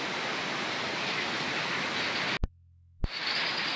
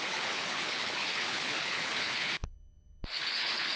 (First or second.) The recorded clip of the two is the first